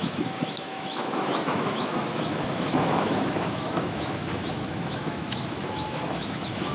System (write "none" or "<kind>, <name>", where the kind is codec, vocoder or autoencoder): autoencoder, DAC-VAE